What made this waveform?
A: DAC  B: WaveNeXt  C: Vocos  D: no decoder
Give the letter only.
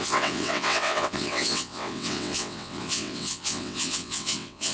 B